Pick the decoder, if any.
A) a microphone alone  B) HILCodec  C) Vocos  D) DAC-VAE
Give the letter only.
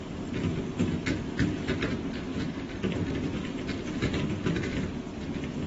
A